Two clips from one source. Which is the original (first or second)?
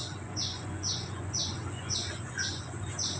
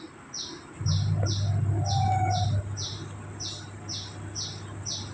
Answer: second